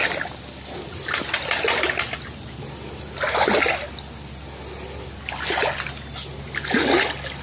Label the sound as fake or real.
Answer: real